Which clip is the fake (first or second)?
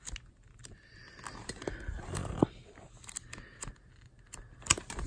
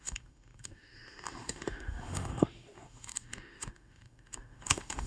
second